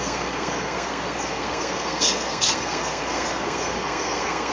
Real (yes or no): no